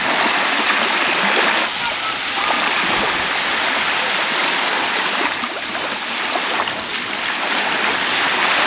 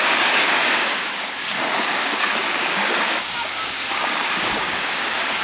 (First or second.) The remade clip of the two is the second